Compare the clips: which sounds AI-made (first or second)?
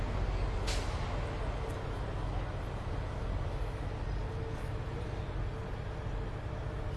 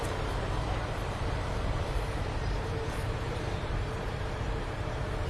second